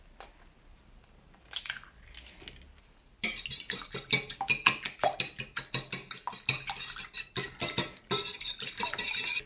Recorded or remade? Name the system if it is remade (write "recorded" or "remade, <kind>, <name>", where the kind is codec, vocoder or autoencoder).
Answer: recorded